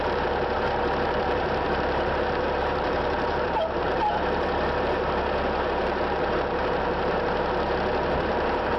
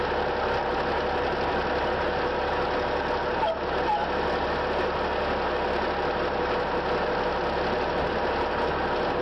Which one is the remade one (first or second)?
first